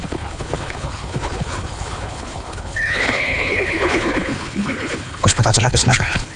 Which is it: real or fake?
fake